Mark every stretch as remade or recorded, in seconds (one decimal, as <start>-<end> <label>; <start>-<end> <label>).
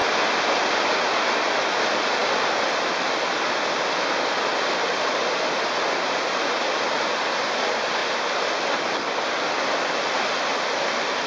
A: 0.0-2.2 recorded; 2.2-5.1 remade; 5.1-8.0 recorded; 8.0-9.4 remade; 9.4-11.3 recorded